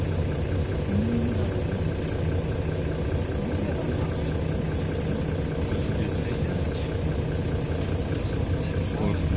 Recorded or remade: recorded